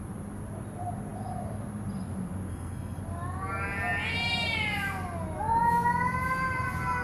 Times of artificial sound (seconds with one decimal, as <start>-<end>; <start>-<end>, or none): 2.5-3.0